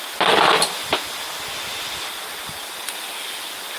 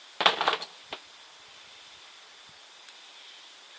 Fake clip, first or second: second